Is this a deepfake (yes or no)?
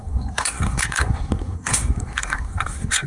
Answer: yes